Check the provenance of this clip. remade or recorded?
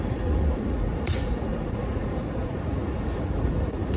remade